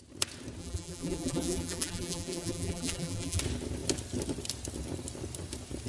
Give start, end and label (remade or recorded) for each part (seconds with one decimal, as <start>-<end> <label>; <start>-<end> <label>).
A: 0.0-0.6 recorded; 0.6-3.4 remade; 3.4-5.9 recorded